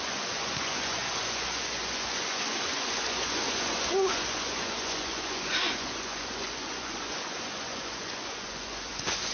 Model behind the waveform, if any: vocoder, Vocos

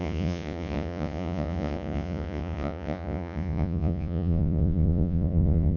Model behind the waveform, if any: vocoder, Vocos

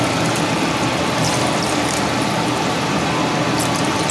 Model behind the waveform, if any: none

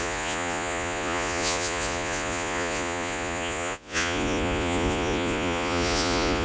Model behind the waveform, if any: vocoder, Vocos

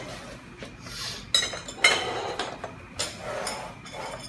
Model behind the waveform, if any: none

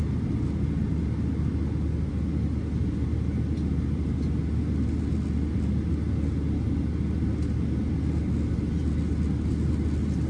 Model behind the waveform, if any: none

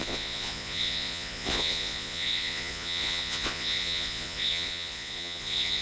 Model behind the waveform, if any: vocoder, Vocos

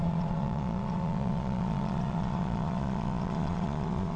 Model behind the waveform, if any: vocoder, Vocos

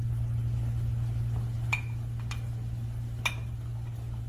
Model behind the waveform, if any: none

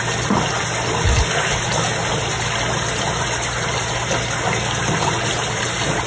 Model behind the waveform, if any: none